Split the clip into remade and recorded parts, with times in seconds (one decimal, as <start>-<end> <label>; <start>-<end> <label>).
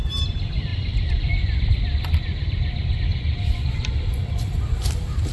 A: 0.0-0.7 recorded; 0.7-3.0 remade; 3.0-5.3 recorded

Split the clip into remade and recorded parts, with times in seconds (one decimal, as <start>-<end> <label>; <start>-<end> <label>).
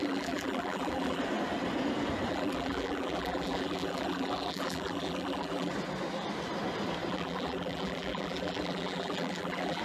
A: 0.0-1.2 remade; 1.2-2.3 recorded; 2.3-5.7 remade; 5.7-7.1 recorded; 7.1-9.8 remade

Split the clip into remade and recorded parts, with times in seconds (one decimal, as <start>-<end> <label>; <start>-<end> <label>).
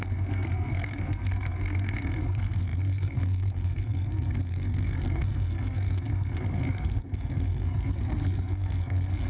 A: 0.0-9.3 remade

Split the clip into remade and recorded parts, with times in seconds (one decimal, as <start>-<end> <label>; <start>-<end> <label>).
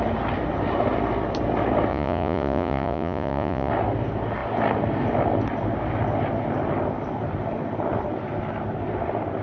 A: 0.0-1.9 recorded; 1.9-3.7 remade; 3.7-9.4 recorded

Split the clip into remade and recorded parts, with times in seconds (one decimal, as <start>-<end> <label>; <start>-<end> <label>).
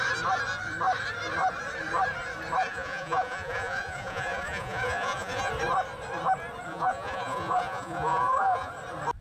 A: 0.0-2.6 recorded; 2.6-5.5 remade; 5.5-6.7 recorded; 6.7-8.7 remade; 8.7-9.2 recorded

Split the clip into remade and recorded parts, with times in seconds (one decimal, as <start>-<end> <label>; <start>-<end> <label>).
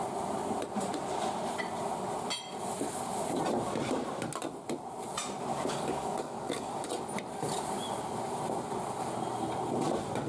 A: 0.0-5.5 recorded; 5.5-6.9 remade; 6.9-10.3 recorded